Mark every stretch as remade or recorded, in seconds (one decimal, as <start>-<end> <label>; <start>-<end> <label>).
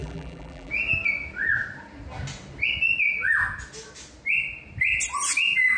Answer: 0.0-0.7 remade; 0.7-5.8 recorded